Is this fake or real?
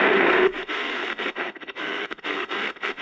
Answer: fake